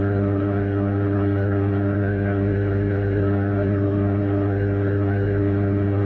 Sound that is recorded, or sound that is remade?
remade